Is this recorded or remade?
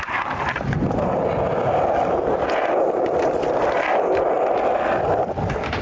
recorded